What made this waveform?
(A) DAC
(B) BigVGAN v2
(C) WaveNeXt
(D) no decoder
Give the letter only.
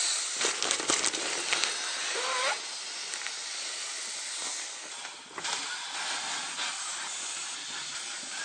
D